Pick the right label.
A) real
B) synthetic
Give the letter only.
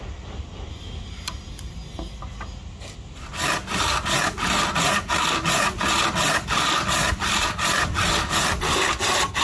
A